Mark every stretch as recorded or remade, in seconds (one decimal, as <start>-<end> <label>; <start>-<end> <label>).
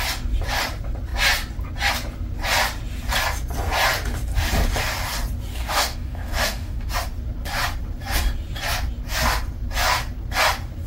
0.0-5.5 recorded; 5.5-6.9 remade; 6.9-10.9 recorded